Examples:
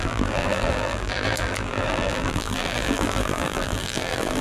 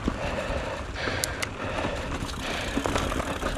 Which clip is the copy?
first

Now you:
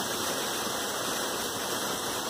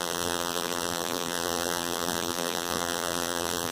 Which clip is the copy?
second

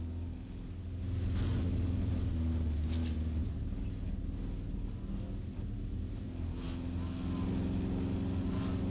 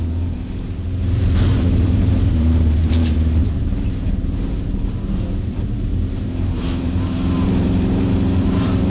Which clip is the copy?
second